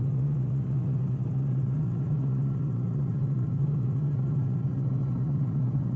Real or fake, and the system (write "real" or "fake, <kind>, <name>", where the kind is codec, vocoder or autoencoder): fake, vocoder, Vocos